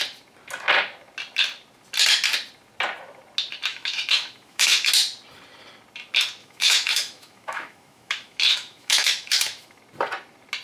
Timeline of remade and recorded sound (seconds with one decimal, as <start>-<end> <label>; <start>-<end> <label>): 0.0-3.7 recorded; 3.7-4.9 remade; 4.9-6.4 recorded; 6.4-9.8 remade; 9.8-10.6 recorded